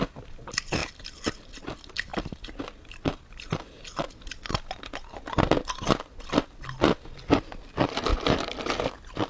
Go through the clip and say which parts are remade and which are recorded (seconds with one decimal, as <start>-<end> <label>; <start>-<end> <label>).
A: 0.0-9.3 recorded